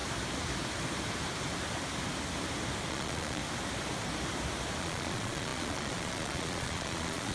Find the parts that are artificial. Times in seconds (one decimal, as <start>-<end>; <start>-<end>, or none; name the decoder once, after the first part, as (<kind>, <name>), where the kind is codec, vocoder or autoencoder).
2.9-3.4 (vocoder, Vocos); 4.8-7.3